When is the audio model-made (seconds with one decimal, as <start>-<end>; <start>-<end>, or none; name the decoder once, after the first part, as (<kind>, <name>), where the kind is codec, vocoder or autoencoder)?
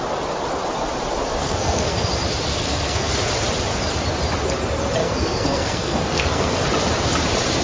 1.4-2.1 (codec, SNAC); 2.5-3.1; 5.0-6.6